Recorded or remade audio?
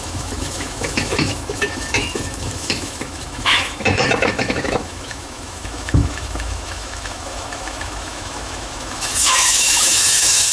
remade